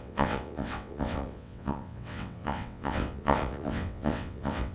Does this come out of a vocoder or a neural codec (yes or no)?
yes